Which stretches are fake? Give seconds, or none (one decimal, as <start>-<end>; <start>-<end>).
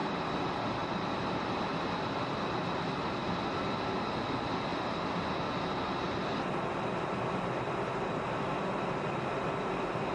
0.0-1.8